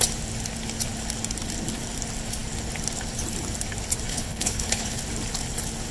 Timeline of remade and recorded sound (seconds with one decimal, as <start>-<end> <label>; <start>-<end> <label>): 0.0-4.1 recorded; 4.1-5.0 remade; 5.0-5.9 recorded